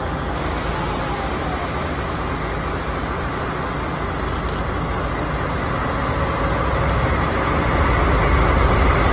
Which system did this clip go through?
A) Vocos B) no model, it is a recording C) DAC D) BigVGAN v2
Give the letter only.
B